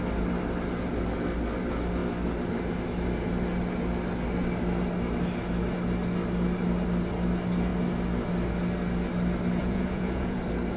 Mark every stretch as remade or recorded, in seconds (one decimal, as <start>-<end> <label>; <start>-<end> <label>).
0.0-9.6 recorded; 9.6-10.4 remade; 10.4-10.8 recorded